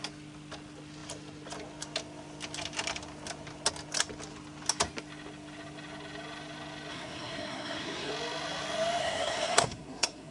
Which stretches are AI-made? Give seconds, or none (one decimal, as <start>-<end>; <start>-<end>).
6.9-8.1; 9.0-10.3